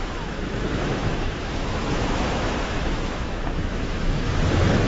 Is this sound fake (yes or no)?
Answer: yes